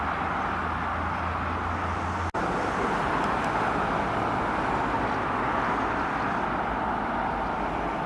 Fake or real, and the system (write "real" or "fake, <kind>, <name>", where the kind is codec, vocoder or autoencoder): real